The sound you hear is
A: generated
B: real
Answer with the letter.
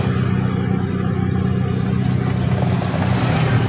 B